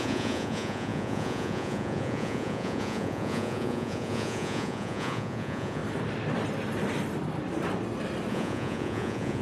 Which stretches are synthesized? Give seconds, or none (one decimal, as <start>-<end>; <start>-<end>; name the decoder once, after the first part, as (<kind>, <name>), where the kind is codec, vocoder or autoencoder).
0.0-5.8 (vocoder, Vocos); 8.3-9.4